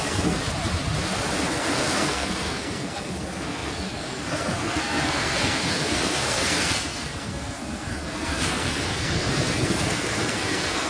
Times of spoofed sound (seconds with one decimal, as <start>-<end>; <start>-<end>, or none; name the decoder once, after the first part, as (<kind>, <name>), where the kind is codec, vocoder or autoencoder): 0.0-0.4 (codec, SNAC); 1.5-10.9